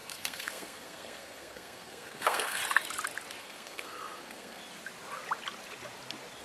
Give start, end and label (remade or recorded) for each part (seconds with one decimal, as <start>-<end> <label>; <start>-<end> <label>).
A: 0.0-2.6 remade; 2.6-3.4 recorded; 3.4-4.6 remade; 4.6-6.4 recorded

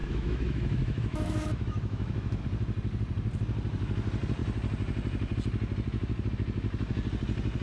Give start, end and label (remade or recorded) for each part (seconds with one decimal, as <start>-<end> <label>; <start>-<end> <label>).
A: 0.0-2.4 remade; 2.4-7.6 recorded

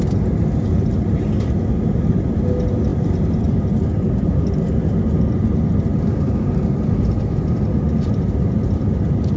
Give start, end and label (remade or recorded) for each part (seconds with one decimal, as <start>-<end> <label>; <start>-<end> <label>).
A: 0.0-9.4 recorded

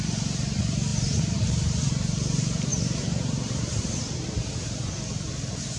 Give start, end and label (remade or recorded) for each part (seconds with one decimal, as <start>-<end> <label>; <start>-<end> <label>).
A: 0.0-2.7 recorded; 2.7-4.4 remade; 4.4-5.8 recorded

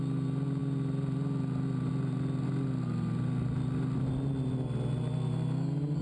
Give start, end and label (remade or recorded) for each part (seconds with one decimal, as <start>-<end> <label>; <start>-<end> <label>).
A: 0.0-6.0 recorded

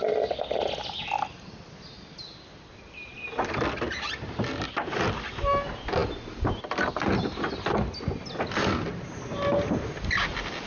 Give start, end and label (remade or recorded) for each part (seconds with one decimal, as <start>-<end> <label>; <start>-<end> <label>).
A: 0.0-3.1 recorded; 3.1-5.1 remade; 5.1-10.7 recorded